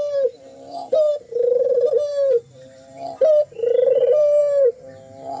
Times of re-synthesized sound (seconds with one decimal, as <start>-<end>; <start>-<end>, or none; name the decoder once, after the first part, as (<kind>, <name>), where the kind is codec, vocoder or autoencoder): 0.0-4.4 (vocoder, BigVGAN v2)